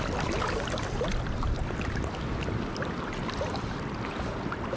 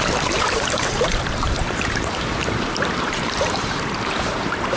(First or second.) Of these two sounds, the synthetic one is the second